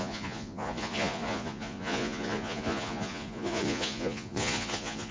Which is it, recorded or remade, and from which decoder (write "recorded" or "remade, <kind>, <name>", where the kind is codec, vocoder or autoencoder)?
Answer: remade, vocoder, Vocos